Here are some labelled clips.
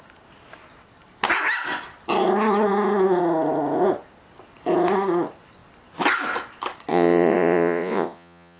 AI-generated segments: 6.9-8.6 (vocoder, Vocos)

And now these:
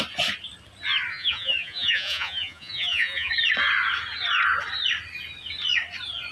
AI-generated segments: 1.1-3.3 (vocoder, Vocos)

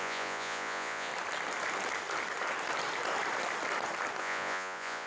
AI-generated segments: 0.0-1.1 (vocoder, Vocos); 4.2-5.1

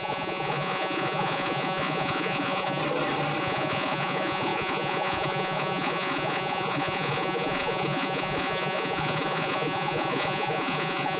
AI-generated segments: 0.0-2.8 (vocoder, Vocos); 3.4-11.2

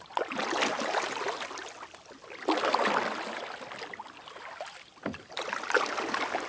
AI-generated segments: none

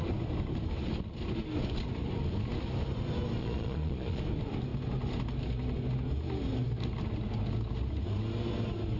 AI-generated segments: 3.4-4.2 (vocoder, Vocos)

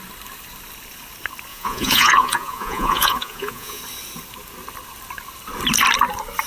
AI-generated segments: 1.5-3.8 (vocoder, Vocos)

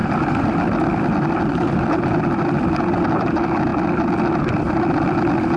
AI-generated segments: none